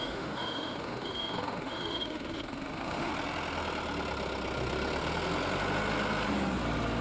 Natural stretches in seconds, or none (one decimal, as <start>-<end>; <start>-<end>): 3.1-7.0